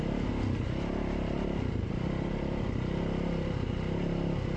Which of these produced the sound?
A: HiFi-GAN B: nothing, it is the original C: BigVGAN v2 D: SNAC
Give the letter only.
B